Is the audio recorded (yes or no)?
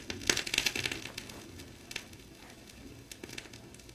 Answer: yes